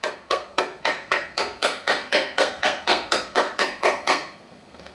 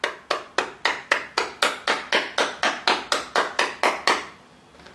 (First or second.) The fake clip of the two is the first